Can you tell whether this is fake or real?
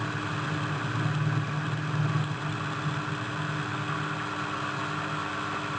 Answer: real